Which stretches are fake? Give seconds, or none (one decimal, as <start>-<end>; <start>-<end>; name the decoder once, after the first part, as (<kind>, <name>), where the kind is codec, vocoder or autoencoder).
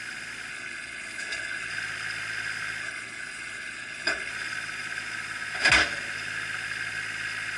0.5-1.7 (codec, HILCodec); 2.8-4.3